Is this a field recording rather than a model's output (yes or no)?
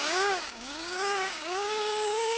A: no